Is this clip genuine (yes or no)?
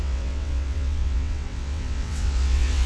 no